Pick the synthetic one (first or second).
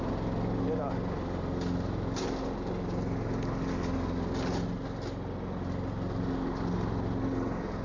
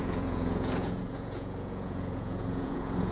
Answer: second